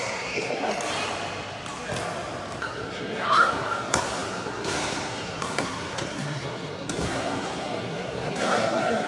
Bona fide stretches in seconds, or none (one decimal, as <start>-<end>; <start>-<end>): 0.7-2.6